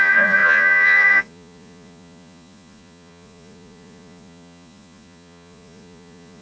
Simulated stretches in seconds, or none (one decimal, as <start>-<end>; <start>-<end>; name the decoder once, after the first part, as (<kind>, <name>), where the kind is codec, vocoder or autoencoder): 0.0-6.4 (vocoder, Vocos)